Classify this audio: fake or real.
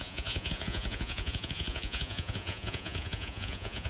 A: fake